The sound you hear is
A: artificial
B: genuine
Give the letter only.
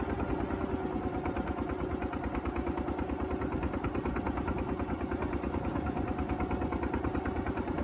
B